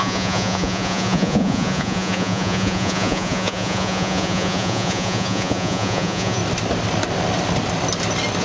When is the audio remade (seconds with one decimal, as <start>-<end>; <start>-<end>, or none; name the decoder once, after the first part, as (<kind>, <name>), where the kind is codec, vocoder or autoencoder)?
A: 0.0-6.4 (vocoder, Vocos)